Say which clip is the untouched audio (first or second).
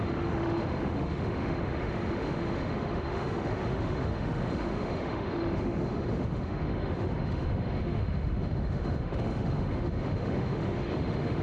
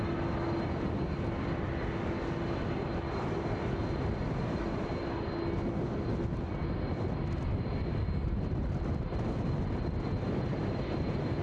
second